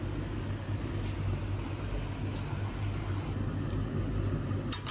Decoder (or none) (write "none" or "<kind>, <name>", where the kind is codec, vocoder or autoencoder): none